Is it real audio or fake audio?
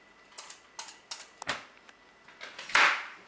real